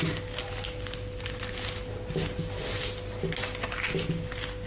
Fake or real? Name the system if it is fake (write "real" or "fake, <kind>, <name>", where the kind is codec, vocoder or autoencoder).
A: real